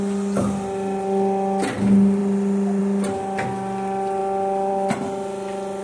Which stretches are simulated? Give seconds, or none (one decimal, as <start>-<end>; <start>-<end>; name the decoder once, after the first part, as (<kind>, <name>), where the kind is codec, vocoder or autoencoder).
none